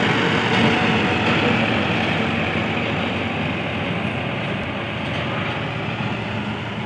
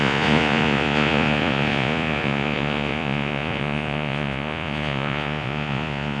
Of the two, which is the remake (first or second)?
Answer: second